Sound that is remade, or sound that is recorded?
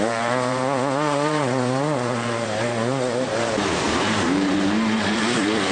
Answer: remade